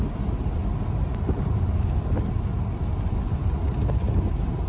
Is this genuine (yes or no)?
yes